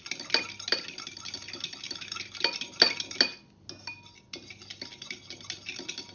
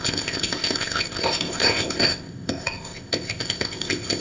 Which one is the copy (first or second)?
second